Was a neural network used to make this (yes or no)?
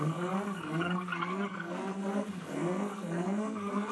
yes